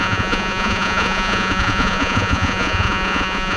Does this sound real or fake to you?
fake